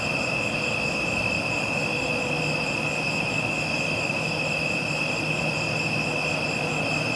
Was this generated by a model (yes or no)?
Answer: no